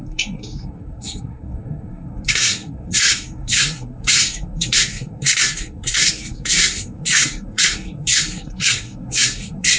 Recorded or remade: remade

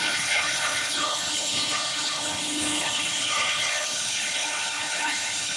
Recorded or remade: remade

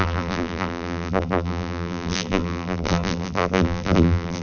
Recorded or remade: remade